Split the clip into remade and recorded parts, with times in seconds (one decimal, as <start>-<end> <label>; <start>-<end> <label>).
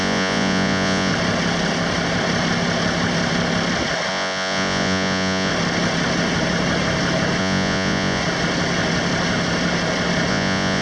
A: 0.0-1.1 remade; 1.1-4.1 recorded; 4.1-5.5 remade; 5.5-7.4 recorded; 7.4-8.2 remade; 8.2-10.3 recorded; 10.3-10.8 remade